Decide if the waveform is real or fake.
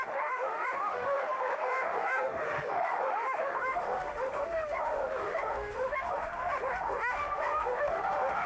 fake